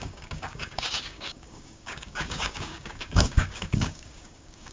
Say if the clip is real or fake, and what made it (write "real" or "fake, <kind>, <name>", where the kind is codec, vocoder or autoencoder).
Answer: fake, codec, DAC